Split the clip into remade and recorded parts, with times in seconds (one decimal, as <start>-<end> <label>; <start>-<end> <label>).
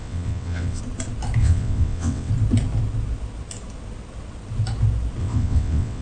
0.0-0.8 remade; 0.8-1.4 recorded; 1.4-2.3 remade; 2.3-5.2 recorded; 5.2-6.0 remade